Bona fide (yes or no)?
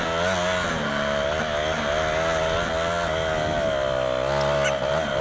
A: yes